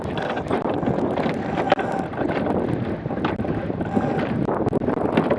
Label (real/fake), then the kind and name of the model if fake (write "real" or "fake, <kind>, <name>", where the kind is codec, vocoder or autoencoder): real